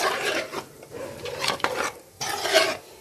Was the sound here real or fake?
fake